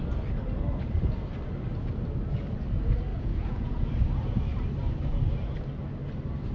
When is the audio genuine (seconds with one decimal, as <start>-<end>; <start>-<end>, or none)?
0.0-3.1; 3.9-6.5